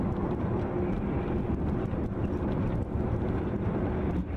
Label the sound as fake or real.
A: real